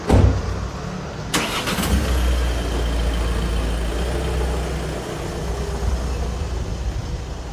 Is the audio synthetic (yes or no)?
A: no